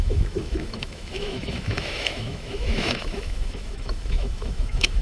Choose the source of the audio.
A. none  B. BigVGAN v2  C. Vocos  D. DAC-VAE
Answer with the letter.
D